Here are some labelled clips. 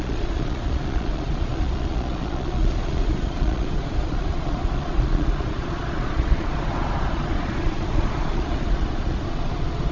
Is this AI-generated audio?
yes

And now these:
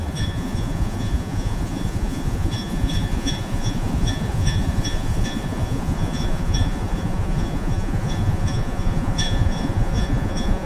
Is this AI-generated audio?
yes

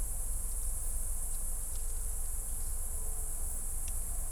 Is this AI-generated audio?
no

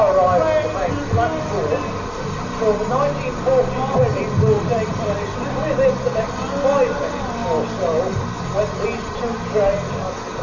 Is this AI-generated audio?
no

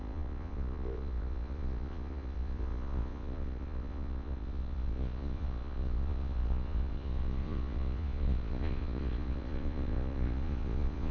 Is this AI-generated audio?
yes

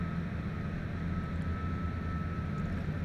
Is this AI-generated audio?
no